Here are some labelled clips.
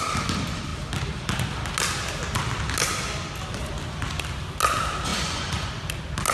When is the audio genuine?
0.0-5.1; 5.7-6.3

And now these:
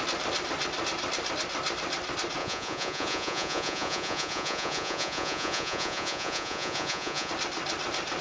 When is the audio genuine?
0.0-2.4; 7.3-8.2

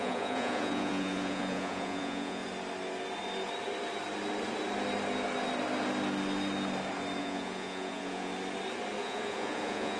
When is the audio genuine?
2.4-7.2; 8.3-9.0

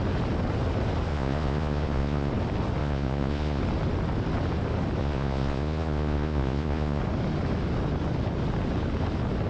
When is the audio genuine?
0.0-1.1; 2.3-2.8; 3.6-5.0; 7.0-9.5